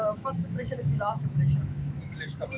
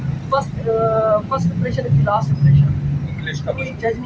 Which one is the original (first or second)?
second